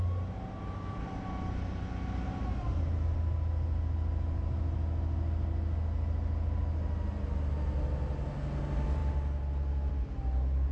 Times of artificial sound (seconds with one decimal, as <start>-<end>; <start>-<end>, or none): none